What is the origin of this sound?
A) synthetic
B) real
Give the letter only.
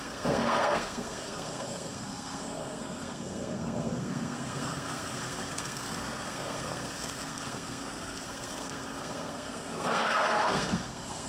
A